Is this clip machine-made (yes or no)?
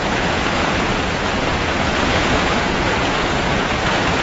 yes